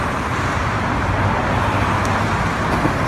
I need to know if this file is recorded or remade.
recorded